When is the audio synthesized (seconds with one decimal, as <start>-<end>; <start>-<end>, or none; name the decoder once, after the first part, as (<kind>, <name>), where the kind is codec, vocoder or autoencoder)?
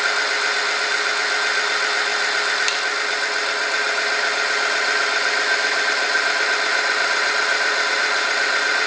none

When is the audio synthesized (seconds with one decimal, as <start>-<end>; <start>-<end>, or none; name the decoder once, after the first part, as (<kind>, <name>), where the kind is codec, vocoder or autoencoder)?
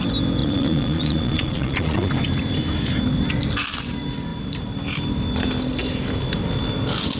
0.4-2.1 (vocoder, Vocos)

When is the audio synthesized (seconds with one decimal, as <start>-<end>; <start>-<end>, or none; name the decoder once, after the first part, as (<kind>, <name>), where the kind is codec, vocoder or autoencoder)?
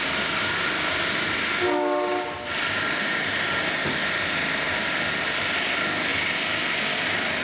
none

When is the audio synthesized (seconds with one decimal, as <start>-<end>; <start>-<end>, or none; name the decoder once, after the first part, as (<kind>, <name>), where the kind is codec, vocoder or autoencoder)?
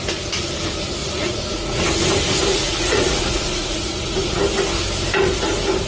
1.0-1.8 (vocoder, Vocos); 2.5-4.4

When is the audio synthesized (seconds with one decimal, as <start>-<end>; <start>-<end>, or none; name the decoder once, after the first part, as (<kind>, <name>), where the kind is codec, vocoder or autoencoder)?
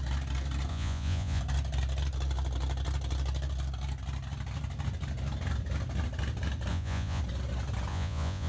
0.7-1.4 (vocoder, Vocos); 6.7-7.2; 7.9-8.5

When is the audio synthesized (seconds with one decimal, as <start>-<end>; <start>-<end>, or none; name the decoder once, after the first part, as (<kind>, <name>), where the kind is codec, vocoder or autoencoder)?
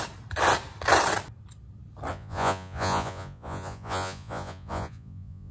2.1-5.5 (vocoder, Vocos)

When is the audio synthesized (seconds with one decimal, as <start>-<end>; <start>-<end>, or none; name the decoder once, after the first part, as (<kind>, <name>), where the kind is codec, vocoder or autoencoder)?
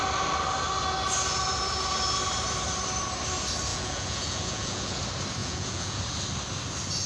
3.7-5.0 (vocoder, Vocos); 5.4-6.0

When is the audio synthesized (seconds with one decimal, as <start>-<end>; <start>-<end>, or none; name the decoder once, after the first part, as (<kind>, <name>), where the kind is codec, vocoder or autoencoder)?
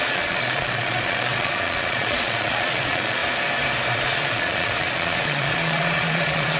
0.0-3.2 (vocoder, Vocos); 3.9-6.6